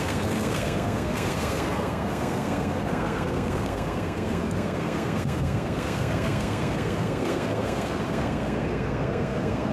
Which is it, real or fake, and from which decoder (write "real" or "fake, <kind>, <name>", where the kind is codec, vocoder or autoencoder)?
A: fake, codec, SNAC